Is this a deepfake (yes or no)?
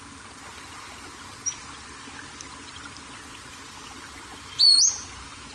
no